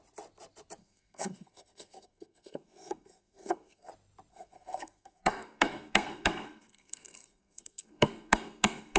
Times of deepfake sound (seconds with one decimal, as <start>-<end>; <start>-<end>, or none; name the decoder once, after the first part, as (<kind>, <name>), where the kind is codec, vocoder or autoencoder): 0.8-3.9 (codec, SNAC); 4.3-9.0